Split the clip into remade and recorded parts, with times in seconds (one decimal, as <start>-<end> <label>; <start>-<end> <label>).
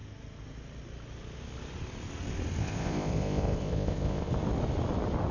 0.0-2.6 recorded; 2.6-4.3 remade; 4.3-5.3 recorded